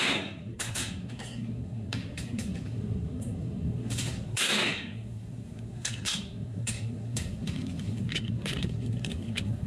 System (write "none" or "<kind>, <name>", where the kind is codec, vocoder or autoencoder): codec, SNAC